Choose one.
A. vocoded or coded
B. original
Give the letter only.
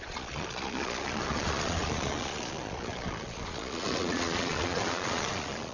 A